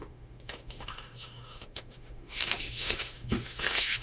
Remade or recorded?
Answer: remade